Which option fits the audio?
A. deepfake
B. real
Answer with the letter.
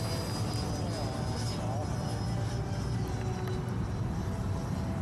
B